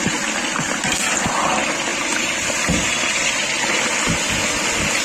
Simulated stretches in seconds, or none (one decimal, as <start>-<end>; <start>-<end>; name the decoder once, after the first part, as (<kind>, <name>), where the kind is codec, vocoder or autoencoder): none